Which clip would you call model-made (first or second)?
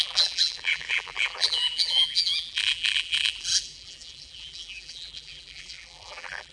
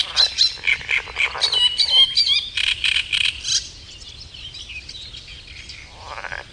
first